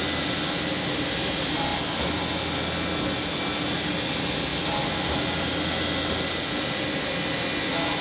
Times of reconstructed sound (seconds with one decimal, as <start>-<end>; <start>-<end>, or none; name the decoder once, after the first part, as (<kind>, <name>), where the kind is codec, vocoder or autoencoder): none